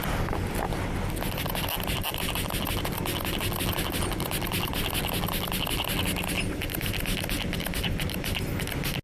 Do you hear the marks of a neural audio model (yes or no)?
no